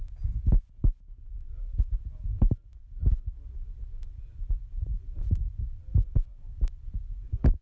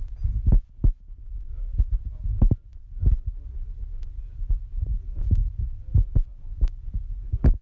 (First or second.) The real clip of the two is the second